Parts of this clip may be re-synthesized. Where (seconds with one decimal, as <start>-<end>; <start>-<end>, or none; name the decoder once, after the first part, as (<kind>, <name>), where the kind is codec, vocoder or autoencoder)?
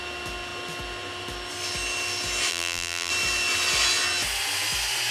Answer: 2.5-3.1 (vocoder, BigVGAN v2)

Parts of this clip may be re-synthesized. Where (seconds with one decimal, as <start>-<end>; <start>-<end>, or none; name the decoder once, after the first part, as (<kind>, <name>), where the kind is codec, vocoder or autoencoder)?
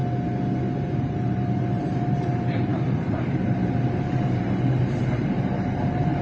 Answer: 1.0-6.2 (vocoder, BigVGAN v2)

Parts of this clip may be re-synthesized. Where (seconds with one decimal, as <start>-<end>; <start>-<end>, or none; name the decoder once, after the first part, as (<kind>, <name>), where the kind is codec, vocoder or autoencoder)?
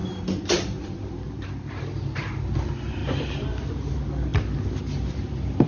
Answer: 0.0-1.8 (vocoder, BigVGAN v2); 3.0-3.9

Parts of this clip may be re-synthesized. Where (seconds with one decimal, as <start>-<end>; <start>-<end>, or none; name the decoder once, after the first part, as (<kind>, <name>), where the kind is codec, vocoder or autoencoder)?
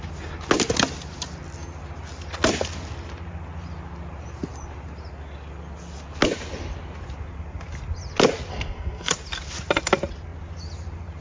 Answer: 8.5-9.1 (codec, SNAC)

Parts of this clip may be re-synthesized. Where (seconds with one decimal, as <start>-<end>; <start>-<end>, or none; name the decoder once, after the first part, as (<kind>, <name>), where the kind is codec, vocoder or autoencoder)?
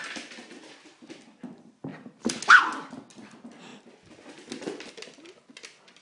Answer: none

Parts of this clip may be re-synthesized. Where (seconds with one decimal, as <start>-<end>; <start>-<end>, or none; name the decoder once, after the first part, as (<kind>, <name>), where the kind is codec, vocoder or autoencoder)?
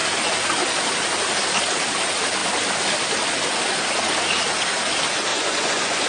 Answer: 5.3-6.1 (vocoder, Vocos)